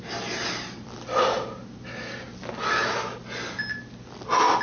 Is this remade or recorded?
recorded